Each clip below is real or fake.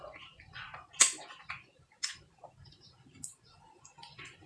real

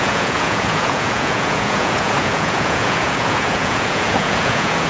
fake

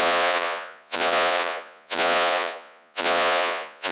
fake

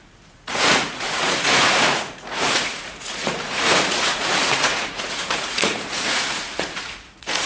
fake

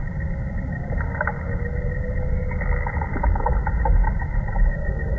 real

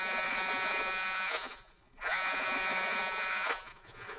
fake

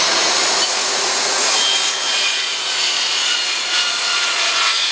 fake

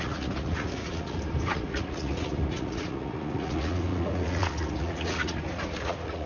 fake